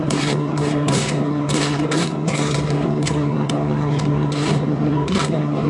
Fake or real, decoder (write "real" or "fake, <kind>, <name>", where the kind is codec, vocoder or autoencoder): fake, codec, SNAC